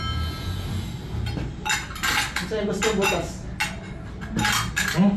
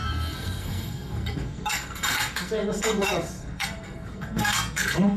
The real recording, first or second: first